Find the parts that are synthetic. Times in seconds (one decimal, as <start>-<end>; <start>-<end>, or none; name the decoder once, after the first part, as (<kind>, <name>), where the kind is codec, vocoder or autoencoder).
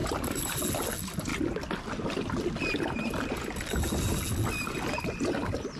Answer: 0.0-0.6 (vocoder, BigVGAN v2)